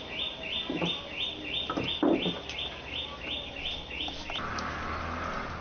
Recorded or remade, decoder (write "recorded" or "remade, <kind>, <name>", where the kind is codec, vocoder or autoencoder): recorded